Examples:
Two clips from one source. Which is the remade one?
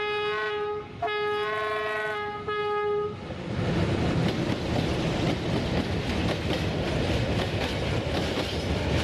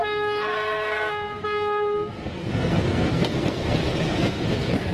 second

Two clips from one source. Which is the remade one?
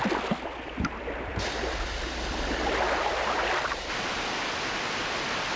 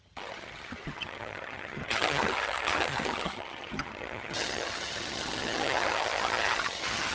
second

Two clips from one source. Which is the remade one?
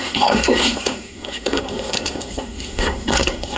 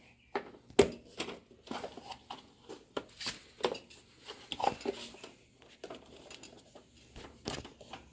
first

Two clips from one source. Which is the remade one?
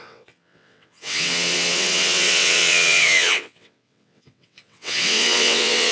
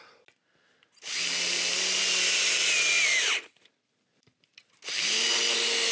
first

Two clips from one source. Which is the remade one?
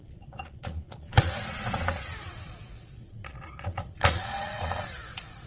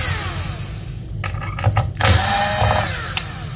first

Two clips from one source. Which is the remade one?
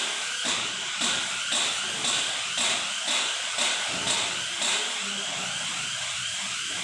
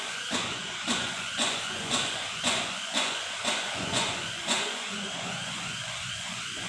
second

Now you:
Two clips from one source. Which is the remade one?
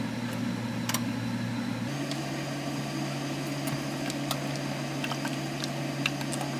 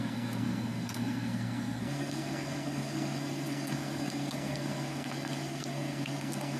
second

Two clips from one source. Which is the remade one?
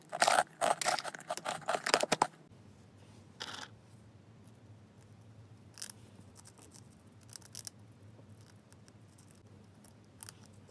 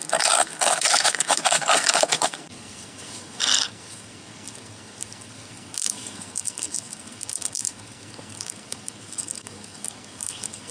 second